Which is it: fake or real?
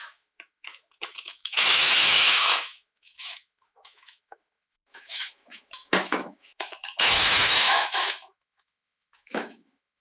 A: fake